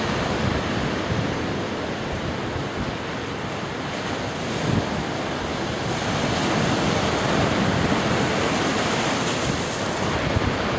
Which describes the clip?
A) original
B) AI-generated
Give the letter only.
A